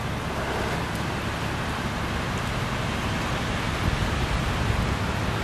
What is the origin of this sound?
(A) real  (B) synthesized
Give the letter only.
A